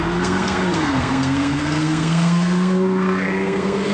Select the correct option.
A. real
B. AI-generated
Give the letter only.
B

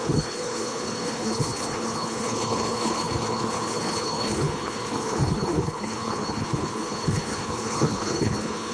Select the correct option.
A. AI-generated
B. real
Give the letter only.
A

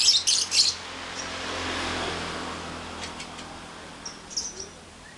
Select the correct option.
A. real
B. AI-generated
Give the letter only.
A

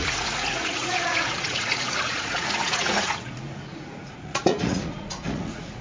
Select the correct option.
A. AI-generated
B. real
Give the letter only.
A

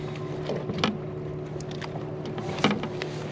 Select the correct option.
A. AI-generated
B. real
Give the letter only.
B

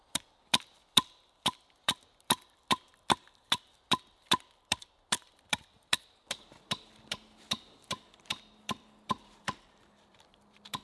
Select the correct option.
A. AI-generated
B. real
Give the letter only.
A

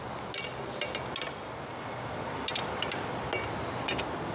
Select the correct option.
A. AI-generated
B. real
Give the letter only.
B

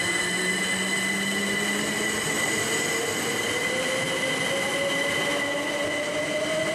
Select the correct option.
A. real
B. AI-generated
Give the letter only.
A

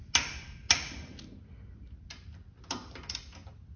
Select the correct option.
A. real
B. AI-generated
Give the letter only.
A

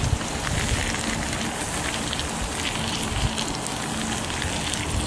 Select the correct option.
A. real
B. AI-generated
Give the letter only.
A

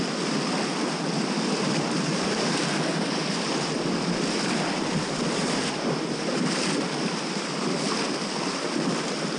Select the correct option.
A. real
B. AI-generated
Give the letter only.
A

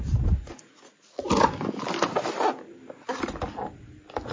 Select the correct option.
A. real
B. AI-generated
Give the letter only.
A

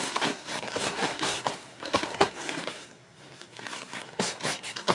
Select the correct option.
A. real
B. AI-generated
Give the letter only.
B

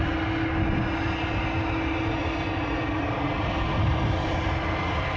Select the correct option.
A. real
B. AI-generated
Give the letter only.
A